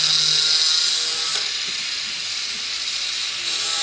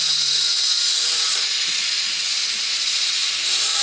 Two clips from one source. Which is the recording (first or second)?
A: first